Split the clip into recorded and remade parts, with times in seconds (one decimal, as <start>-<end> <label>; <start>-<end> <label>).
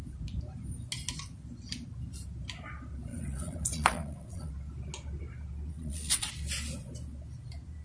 0.0-3.1 recorded; 3.1-4.5 remade; 4.5-5.7 recorded; 5.7-6.3 remade; 6.3-7.8 recorded